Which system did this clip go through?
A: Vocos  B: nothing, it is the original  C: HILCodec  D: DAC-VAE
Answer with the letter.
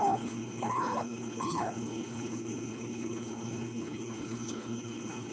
C